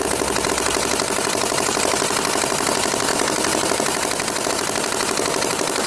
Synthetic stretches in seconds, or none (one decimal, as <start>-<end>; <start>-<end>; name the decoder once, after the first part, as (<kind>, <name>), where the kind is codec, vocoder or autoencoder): none

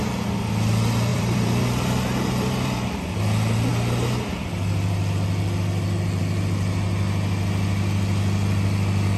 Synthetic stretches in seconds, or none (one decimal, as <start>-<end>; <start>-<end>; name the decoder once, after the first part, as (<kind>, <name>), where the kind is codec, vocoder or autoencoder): 1.1-3.2 (vocoder, BigVGAN v2)

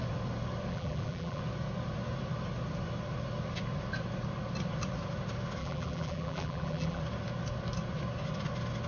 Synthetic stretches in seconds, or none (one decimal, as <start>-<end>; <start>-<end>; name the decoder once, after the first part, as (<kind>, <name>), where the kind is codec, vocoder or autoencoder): 0.7-1.4 (vocoder, BigVGAN v2); 5.6-7.0

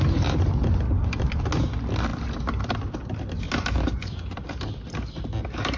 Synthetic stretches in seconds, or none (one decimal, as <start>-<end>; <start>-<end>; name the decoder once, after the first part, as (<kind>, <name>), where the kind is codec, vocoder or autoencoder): none

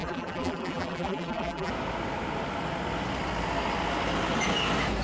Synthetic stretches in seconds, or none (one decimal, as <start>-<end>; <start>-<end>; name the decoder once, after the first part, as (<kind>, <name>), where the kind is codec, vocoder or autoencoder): 0.0-1.7 (vocoder, BigVGAN v2)